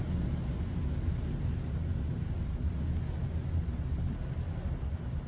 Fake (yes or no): no